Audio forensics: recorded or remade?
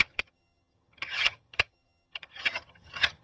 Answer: remade